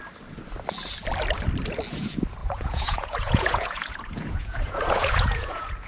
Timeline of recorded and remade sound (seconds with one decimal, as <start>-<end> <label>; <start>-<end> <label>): 0.0-2.4 recorded; 2.4-5.9 remade

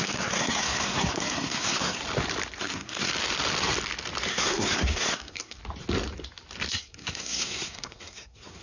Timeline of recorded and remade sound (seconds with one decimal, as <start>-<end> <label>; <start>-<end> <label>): 0.0-2.0 remade; 2.0-2.6 recorded; 2.6-3.1 remade; 3.1-4.3 recorded; 4.3-5.6 remade; 5.6-6.7 recorded; 6.7-8.6 remade

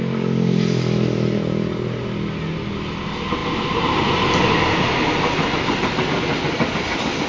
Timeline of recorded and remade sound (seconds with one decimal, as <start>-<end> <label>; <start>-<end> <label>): 0.0-7.3 recorded